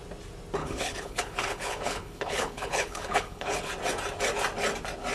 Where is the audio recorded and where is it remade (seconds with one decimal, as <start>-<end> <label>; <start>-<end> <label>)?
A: 0.0-0.6 recorded; 0.6-3.7 remade; 3.7-5.1 recorded